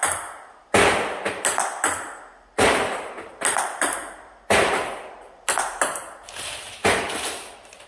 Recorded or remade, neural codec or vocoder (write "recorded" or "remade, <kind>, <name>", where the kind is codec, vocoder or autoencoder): recorded